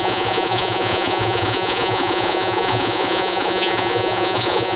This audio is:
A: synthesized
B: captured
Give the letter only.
A